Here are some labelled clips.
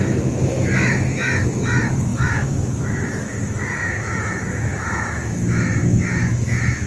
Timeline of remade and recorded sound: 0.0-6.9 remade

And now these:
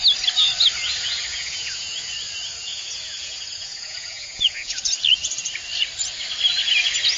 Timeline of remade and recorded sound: 0.0-1.3 recorded; 1.3-2.0 remade; 2.0-2.6 recorded; 2.6-4.8 remade; 4.8-7.2 recorded

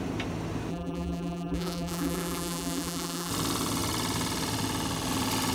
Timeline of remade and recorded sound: 0.0-0.7 recorded; 0.7-3.3 remade; 3.3-5.5 recorded

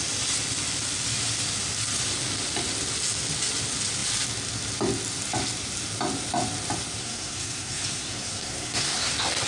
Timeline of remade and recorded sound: 0.0-7.0 recorded; 7.0-9.1 remade; 9.1-9.5 recorded